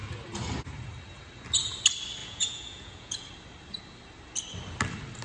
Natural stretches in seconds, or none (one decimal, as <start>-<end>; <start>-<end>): 0.0-2.2; 3.3-5.2